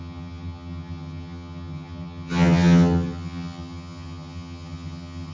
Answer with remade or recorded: remade